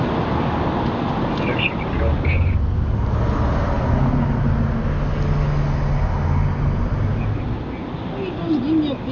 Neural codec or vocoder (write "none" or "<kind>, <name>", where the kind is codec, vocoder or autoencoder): none